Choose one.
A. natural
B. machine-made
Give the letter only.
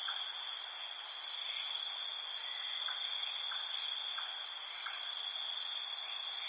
A